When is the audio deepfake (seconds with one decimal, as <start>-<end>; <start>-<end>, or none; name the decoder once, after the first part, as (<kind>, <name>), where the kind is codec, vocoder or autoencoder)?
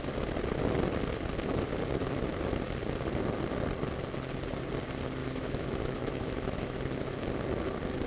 5.2-6.8 (autoencoder, DAC-VAE)